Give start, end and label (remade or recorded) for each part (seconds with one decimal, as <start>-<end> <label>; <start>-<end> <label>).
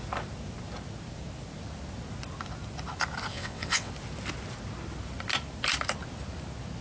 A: 0.0-3.3 recorded; 3.3-3.9 remade; 3.9-6.8 recorded